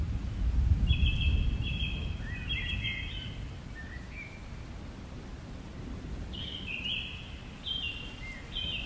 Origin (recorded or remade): recorded